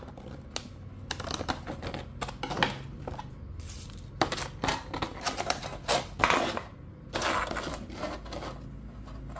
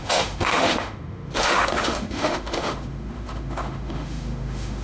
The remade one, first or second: second